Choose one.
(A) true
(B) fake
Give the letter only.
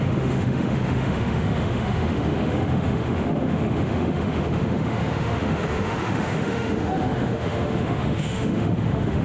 B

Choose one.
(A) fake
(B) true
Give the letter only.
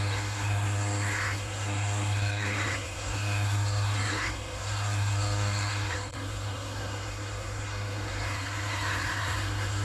A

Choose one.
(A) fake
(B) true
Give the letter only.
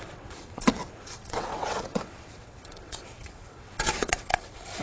A